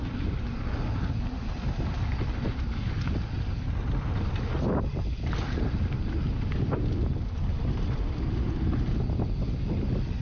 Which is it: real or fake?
real